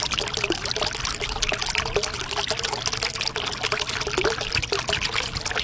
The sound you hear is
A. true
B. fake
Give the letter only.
A